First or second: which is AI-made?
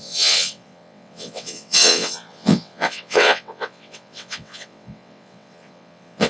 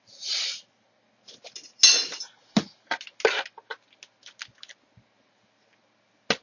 first